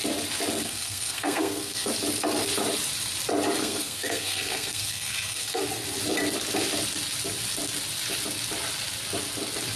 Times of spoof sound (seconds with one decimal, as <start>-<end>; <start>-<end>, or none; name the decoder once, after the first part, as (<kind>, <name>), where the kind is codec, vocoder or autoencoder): 0.6-1.9 (codec, SNAC); 3.6-5.6